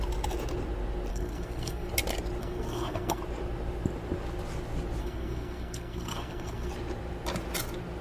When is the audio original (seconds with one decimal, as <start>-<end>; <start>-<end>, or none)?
0.0-1.1; 1.9-2.4; 3.2-5.0; 6.7-8.0